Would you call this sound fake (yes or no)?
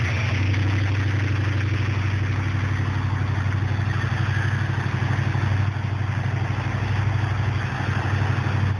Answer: no